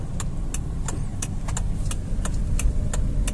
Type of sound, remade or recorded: recorded